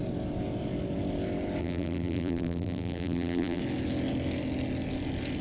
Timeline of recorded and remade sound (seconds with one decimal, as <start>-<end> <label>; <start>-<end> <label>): 0.0-1.6 recorded; 1.6-3.6 remade; 3.6-5.4 recorded